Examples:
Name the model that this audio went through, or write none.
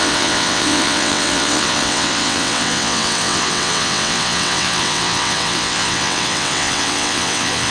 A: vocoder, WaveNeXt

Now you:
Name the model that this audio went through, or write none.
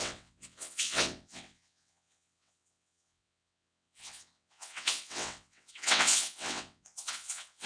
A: vocoder, WaveNeXt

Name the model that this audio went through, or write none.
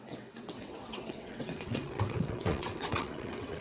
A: vocoder, WaveNeXt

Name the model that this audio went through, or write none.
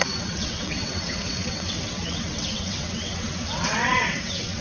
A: vocoder, WaveNeXt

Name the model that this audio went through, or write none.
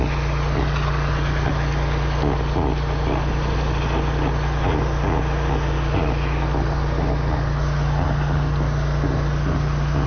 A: none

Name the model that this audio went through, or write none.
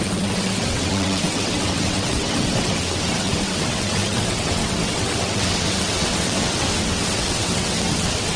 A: vocoder, WaveNeXt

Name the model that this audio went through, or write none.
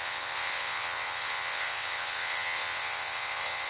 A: vocoder, WaveNeXt